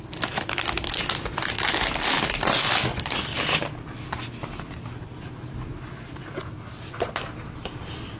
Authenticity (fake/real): real